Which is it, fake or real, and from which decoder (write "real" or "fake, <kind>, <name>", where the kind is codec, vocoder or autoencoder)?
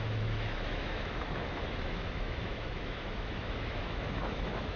fake, autoencoder, DAC-VAE